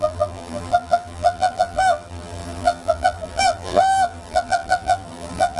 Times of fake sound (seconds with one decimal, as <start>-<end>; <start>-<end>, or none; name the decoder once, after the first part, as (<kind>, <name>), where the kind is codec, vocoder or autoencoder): 0.0-5.6 (vocoder, BigVGAN v2)

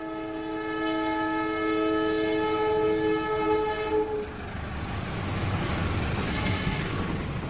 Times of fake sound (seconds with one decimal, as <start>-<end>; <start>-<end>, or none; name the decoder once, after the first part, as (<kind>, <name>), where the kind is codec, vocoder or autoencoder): 6.3-6.8 (codec, SNAC)

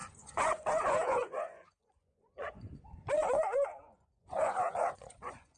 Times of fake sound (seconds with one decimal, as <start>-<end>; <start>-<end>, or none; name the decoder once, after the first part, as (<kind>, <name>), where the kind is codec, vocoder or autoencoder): 0.0-5.6 (vocoder, Vocos)

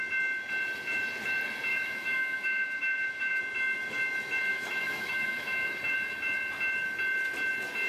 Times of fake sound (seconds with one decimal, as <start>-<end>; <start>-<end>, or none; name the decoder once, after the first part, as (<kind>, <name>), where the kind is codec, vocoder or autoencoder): 1.7-3.4 (autoencoder, DAC-VAE); 4.5-5.8

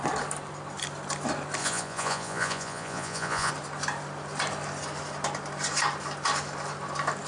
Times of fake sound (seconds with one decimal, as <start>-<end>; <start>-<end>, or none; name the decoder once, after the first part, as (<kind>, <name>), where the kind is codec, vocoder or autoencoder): 1.6-3.5 (vocoder, Vocos)

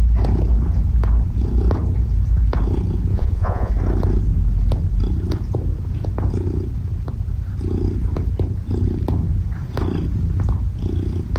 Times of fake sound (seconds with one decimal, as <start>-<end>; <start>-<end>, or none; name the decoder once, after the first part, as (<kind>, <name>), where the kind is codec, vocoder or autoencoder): 3.1-3.7 (vocoder, Vocos)

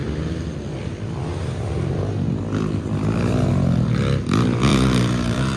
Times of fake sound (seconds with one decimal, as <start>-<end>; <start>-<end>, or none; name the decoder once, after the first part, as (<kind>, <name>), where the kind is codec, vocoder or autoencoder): 4.7-5.6 (vocoder, BigVGAN v2)

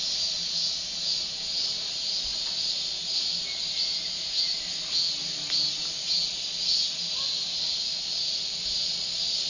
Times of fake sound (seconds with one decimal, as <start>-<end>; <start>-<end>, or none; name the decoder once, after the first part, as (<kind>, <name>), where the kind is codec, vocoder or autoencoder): none